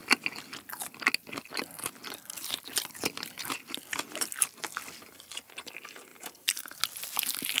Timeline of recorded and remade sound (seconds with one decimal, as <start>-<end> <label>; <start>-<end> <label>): 0.0-6.1 recorded; 6.1-6.8 remade; 6.8-7.6 recorded